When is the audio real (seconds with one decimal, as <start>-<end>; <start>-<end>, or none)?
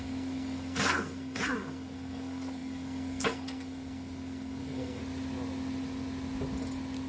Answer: 5.0-7.1